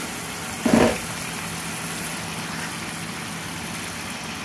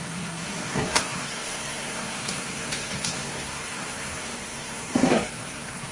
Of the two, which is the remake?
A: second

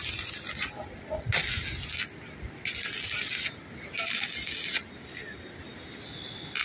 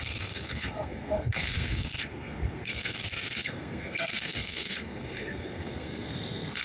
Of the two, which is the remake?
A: second